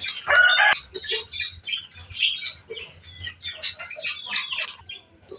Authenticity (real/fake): real